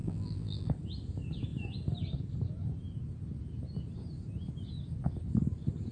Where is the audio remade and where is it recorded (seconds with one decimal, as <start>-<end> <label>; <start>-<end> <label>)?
0.0-0.7 remade; 0.7-5.9 recorded